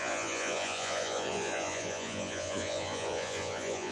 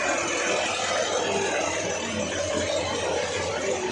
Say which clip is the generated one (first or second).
first